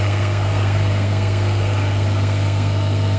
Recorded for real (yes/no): no